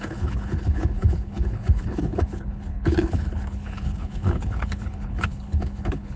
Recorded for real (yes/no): no